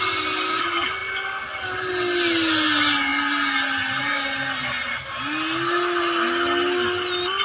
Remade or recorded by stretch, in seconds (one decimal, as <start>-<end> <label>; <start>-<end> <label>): 0.0-7.4 recorded